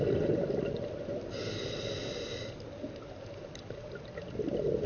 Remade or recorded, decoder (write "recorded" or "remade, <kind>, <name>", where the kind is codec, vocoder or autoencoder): recorded